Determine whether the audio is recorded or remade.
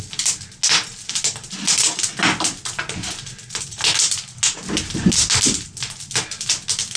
recorded